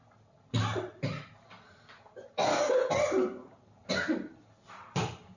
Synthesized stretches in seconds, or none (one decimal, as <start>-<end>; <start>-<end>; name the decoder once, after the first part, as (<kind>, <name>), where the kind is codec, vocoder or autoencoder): none